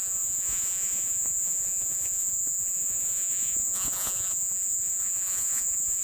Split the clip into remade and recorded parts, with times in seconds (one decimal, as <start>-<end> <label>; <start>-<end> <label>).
0.0-6.0 remade